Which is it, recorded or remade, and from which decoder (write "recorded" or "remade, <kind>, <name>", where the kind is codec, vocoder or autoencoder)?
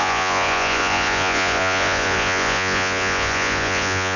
remade, vocoder, Vocos